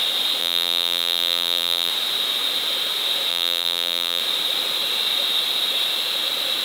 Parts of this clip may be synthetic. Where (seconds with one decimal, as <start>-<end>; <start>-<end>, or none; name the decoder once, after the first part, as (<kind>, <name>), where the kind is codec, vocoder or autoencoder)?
0.4-1.9 (vocoder, BigVGAN v2); 3.3-4.2